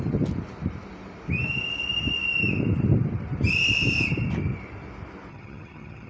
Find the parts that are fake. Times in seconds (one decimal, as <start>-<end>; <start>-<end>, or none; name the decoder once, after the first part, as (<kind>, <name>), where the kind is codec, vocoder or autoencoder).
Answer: 5.3-6.1 (vocoder, HiFi-GAN)